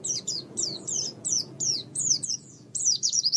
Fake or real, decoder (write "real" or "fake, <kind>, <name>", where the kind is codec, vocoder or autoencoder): fake, vocoder, Vocos